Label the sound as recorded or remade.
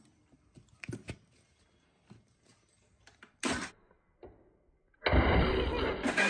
recorded